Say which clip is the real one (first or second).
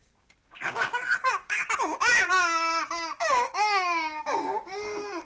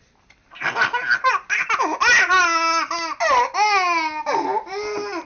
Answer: second